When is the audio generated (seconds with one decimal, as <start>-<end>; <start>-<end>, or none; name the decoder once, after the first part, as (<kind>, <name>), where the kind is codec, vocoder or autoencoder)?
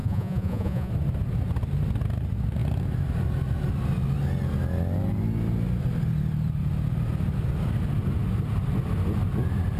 0.0-0.9 (vocoder, Vocos)